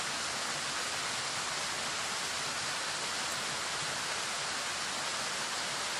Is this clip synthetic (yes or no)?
no